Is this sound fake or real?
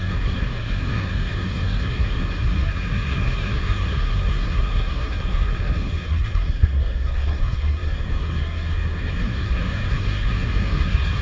fake